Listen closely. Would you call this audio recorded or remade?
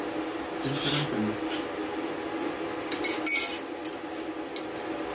recorded